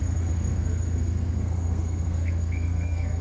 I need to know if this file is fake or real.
fake